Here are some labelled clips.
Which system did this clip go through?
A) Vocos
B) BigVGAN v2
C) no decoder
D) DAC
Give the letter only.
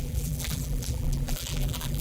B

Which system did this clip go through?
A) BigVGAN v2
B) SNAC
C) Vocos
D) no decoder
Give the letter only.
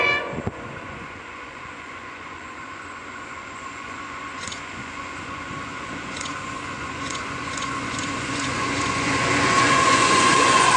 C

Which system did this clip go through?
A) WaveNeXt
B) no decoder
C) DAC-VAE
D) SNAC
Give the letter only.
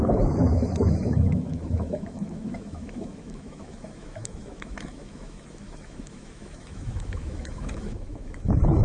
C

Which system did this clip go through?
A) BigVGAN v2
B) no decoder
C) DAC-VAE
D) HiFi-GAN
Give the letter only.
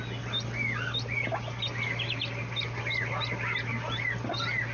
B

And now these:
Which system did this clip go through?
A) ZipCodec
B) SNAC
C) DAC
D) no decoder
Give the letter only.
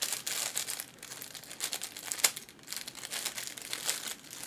D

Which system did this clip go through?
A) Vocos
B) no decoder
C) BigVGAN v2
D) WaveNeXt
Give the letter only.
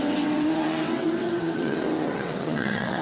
D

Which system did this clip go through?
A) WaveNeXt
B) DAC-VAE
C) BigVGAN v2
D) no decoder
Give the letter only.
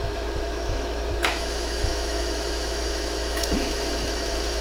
B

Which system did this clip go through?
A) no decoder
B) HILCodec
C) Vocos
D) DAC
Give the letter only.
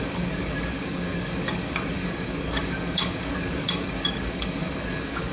D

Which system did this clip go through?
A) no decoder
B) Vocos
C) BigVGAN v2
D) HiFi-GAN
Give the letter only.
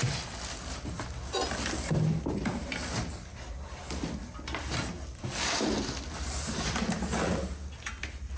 A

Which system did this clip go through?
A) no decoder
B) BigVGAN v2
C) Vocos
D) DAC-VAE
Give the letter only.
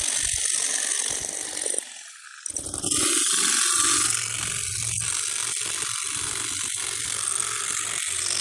A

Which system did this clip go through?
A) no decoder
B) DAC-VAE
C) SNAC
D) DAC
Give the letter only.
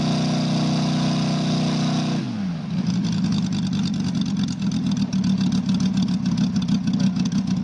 A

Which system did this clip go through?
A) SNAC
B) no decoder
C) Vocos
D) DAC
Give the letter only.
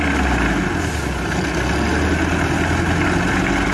B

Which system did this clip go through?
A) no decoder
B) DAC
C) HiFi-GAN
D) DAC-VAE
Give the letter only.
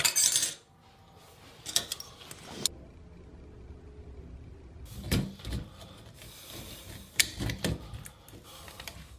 A